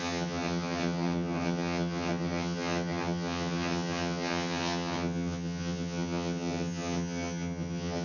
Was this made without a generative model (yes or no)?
no